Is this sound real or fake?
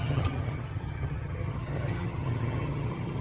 fake